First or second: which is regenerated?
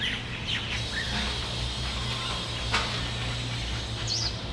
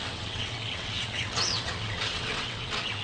second